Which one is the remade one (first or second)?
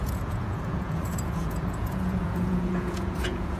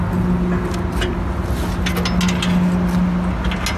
first